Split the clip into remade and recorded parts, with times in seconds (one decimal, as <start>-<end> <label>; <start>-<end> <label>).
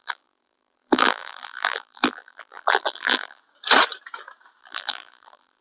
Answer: 0.0-3.4 remade; 3.4-4.6 recorded; 4.6-5.6 remade